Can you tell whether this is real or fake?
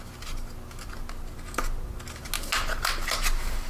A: real